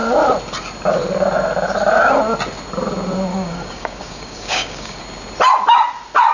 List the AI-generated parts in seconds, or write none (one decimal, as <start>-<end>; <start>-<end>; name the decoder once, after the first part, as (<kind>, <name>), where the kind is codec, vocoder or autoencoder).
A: 3.3-5.0 (codec, DAC)